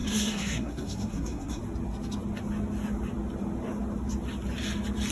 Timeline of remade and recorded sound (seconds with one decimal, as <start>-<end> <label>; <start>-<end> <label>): 0.0-1.6 remade; 1.6-5.1 recorded